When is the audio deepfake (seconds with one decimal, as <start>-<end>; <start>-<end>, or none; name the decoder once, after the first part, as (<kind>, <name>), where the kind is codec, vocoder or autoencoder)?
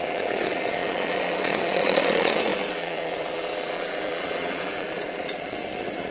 0.0-6.1 (vocoder, Vocos)